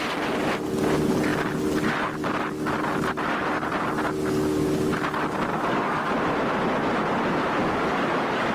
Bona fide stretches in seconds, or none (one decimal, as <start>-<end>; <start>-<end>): 0.0-5.5; 6.1-7.6